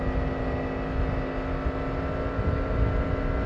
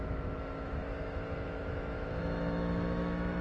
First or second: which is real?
first